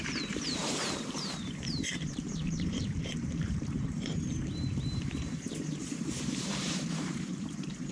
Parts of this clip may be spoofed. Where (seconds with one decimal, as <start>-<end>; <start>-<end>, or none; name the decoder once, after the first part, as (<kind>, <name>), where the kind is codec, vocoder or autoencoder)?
0.0-7.9 (vocoder, BigVGAN v2)